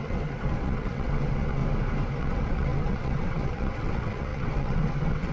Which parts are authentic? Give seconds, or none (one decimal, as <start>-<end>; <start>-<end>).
1.6-2.2